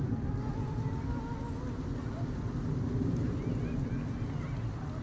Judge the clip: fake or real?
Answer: real